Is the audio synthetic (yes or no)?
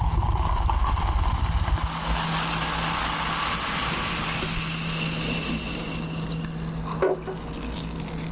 no